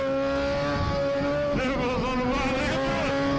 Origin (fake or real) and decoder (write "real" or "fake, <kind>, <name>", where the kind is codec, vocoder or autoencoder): real